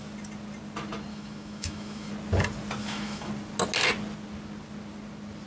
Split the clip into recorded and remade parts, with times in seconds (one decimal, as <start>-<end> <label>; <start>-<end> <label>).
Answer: 0.0-1.1 recorded; 1.1-2.1 remade; 2.1-2.8 recorded; 2.8-3.3 remade; 3.3-5.5 recorded